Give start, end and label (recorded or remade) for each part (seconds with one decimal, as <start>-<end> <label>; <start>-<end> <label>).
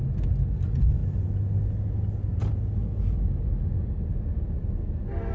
0.0-5.3 recorded